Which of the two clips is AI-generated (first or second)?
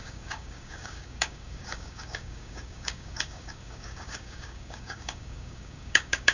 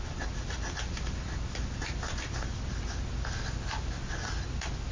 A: first